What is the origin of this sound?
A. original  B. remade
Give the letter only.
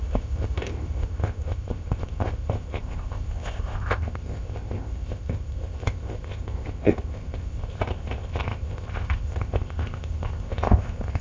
B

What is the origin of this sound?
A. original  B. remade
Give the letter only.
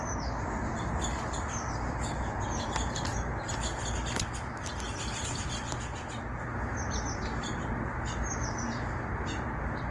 A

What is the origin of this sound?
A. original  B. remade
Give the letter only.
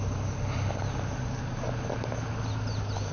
A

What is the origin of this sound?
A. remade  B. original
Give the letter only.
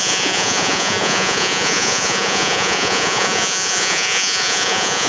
A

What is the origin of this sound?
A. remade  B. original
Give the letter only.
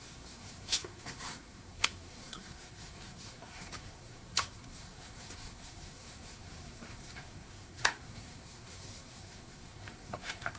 A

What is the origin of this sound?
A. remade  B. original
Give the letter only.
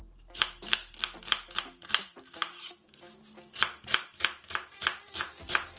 B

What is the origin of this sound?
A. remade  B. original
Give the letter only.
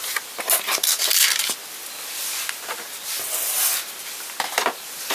B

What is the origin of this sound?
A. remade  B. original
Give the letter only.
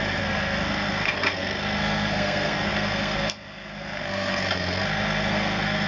A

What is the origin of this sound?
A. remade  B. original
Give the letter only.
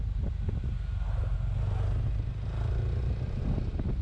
B